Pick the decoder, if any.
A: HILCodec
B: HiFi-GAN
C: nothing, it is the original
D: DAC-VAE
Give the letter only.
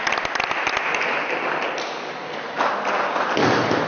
C